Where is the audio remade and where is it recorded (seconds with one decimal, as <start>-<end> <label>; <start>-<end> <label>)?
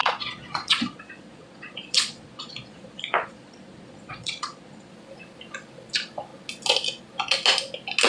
0.0-4.9 remade; 4.9-8.1 recorded